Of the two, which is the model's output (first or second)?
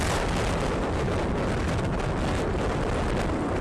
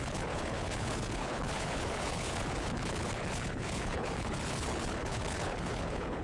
second